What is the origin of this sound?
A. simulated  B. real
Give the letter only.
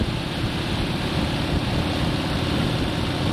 B